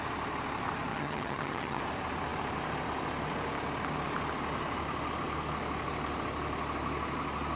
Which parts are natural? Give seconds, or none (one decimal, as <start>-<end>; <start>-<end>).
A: 0.0-0.9; 1.8-7.6